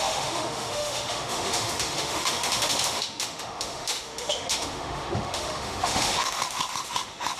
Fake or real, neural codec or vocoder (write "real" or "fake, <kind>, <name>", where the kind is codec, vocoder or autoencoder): fake, autoencoder, DAC-VAE